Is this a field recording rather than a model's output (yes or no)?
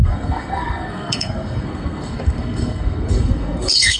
no